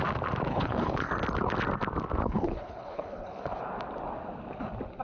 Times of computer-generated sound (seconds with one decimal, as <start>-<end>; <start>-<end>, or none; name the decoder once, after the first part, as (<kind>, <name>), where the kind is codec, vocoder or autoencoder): 0.5-1.1 (codec, HILCodec); 2.2-3.6

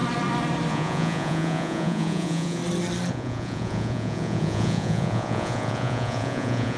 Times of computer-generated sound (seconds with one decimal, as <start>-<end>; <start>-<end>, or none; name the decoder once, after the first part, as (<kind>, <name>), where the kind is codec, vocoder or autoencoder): 0.7-2.6 (vocoder, Vocos); 3.1-6.8

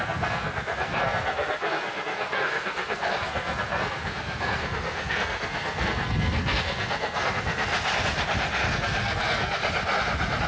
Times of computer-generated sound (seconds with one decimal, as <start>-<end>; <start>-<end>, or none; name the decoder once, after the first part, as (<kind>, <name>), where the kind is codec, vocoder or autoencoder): 0.0-7.7 (codec, SNAC); 8.7-9.6

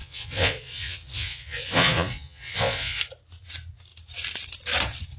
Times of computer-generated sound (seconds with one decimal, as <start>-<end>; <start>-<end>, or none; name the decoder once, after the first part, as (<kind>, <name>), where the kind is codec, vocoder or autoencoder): 0.0-3.0 (vocoder, Vocos)

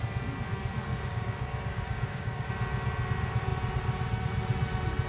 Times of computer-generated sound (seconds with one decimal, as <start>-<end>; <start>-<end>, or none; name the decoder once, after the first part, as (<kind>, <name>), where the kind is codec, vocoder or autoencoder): 0.9-2.5 (codec, DAC)

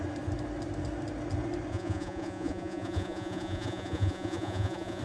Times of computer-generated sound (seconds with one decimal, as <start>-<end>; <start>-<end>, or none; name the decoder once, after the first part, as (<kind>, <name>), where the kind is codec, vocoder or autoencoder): 1.7-5.0 (vocoder, Vocos)

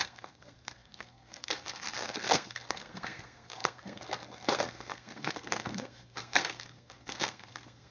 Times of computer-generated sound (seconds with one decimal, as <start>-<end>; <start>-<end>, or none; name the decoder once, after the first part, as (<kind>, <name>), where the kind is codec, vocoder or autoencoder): 0.0-7.9 (codec, SNAC)